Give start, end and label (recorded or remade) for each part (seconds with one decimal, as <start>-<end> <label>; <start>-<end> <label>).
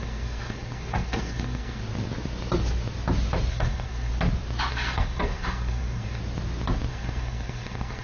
0.0-1.8 remade; 1.8-3.5 recorded; 3.5-4.1 remade; 4.1-4.7 recorded; 4.7-6.2 remade; 6.2-6.9 recorded; 6.9-8.0 remade